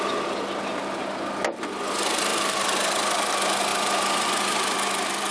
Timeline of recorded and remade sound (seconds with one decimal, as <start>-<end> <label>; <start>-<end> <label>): 0.0-5.3 recorded